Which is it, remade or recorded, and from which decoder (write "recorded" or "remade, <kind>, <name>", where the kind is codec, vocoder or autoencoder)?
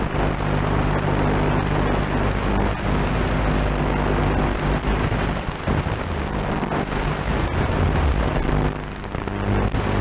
recorded